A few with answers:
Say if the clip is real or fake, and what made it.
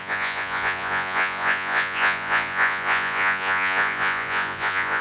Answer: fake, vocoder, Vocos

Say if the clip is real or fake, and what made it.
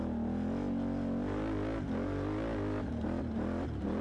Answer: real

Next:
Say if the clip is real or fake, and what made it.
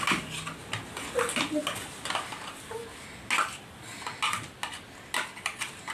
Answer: real